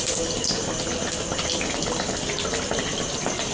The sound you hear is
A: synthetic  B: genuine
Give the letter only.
B